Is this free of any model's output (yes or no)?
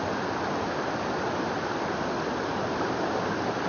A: yes